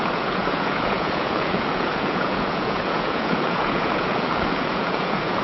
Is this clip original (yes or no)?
no